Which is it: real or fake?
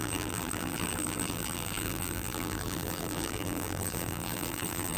fake